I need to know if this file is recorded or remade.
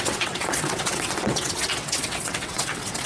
remade